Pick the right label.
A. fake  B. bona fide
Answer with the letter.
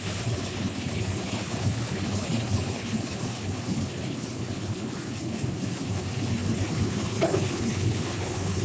A